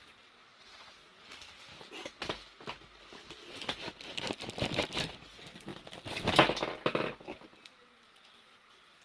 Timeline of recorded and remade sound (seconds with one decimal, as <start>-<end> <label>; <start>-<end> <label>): 0.0-9.0 recorded